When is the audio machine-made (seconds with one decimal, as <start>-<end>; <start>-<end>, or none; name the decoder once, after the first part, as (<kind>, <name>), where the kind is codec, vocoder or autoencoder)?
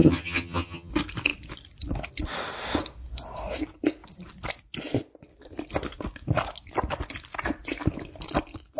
0.0-0.9 (vocoder, HiFi-GAN)